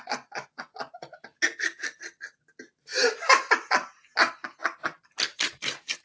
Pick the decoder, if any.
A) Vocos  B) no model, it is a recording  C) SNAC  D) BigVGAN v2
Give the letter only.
B